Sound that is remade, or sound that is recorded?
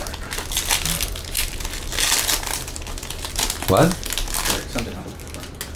recorded